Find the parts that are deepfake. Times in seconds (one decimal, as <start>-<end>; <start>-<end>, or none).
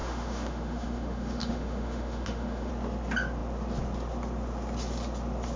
0.0-2.7